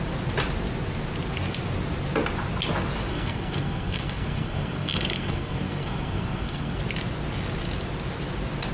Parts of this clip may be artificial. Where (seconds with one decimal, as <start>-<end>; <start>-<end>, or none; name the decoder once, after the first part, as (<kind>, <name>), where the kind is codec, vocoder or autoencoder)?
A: 3.1-6.8 (codec, SNAC)

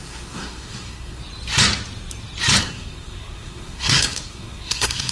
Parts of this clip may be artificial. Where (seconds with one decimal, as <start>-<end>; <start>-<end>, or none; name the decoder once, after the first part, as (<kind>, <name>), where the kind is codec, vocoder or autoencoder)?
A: 0.0-1.2 (codec, SNAC); 2.6-5.1

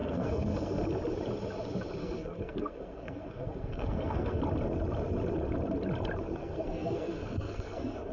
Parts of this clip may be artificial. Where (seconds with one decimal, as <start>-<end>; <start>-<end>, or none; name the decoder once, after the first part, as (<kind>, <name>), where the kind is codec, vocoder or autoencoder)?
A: 0.0-0.8 (codec, SNAC); 2.0-4.4; 6.4-8.1

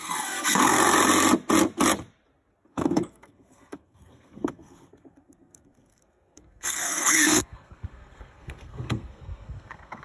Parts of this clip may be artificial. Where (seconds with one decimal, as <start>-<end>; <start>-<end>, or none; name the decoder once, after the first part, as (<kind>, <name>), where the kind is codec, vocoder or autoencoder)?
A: 0.0-0.8 (codec, SNAC); 2.7-10.0